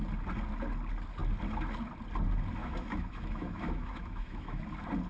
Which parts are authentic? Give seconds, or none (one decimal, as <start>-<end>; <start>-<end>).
0.0-2.6; 4.6-5.1